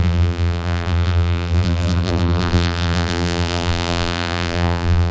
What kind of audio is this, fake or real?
fake